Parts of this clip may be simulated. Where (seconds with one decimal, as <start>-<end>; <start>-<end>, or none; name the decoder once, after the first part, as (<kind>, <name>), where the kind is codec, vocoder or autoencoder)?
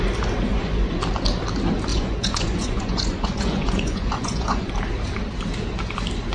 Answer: 0.5-1.0 (vocoder, Vocos); 1.9-4.7